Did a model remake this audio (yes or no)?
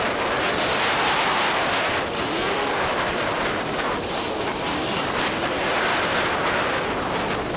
no